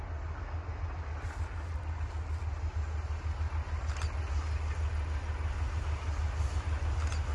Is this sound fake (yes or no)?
no